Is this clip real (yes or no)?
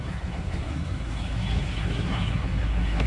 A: no